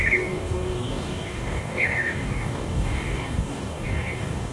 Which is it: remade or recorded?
remade